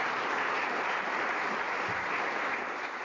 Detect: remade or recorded recorded